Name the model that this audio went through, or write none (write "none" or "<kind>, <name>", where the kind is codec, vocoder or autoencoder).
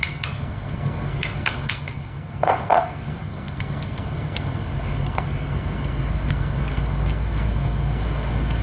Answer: codec, SNAC